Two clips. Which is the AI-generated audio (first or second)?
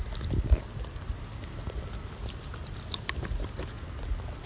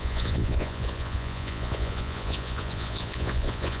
second